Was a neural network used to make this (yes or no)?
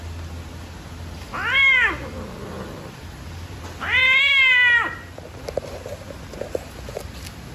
no